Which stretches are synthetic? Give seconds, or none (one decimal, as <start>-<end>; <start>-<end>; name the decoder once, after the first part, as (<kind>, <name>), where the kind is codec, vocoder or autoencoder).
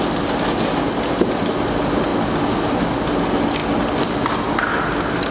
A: none